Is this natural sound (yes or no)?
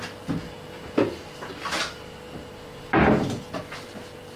yes